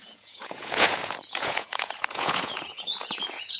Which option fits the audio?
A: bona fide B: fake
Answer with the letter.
B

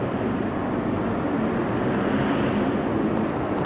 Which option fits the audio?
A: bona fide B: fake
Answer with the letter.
A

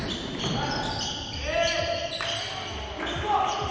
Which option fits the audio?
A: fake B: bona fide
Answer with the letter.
B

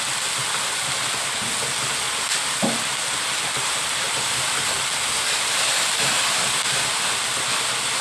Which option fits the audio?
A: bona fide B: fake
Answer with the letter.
A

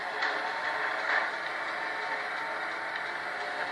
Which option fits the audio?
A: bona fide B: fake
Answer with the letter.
B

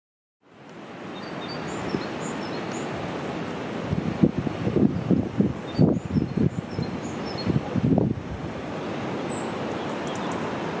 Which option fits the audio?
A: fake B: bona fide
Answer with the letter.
B